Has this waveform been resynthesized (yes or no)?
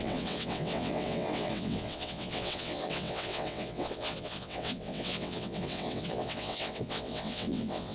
yes